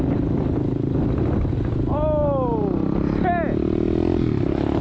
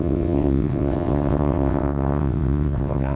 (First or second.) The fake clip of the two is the second